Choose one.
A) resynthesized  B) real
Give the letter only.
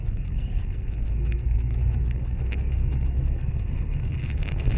A